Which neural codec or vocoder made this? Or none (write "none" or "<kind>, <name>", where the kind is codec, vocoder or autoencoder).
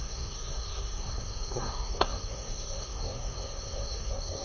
codec, SNAC